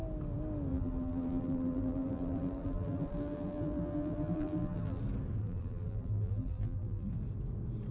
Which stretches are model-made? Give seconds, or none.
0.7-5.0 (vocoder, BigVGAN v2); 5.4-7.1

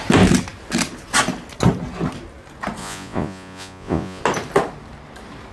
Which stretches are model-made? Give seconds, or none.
2.8-4.2 (vocoder, Vocos)

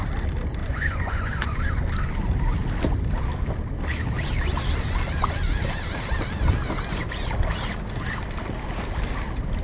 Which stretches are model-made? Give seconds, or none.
0.6-1.6 (vocoder, Vocos)

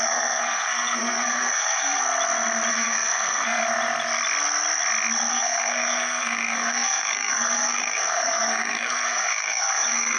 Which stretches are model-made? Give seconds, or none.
0.0-2.0 (codec, SNAC); 2.7-3.6; 5.3-10.2

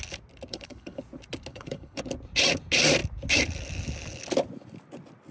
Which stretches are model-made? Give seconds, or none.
0.5-1.0 (codec, HILCodec); 1.5-2.0